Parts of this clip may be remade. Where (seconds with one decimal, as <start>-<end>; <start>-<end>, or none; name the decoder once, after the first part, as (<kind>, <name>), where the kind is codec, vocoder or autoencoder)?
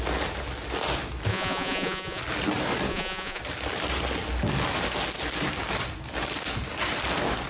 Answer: 1.3-2.2 (vocoder, Vocos); 2.9-3.4